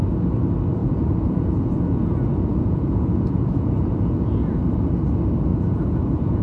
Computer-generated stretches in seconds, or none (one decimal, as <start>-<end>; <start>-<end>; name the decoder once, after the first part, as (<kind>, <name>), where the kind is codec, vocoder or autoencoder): 0.8-4.6 (vocoder, Vocos); 5.5-6.4